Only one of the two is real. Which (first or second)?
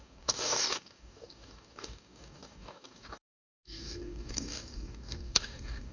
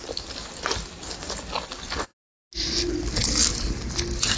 second